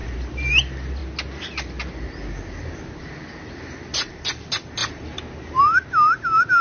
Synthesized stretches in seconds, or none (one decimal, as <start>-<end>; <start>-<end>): 0.0-0.5; 4.8-5.6